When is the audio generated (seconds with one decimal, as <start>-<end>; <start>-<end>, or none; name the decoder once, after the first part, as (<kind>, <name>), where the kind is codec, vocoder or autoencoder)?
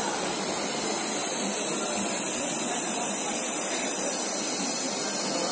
1.2-4.2 (vocoder, BigVGAN v2)